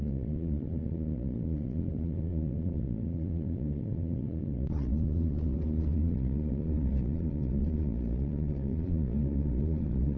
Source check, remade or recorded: remade